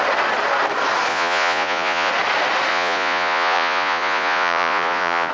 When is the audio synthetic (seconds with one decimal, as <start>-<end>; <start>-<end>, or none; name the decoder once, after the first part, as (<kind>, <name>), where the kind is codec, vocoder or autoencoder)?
1.1-2.1 (vocoder, Vocos); 2.7-5.3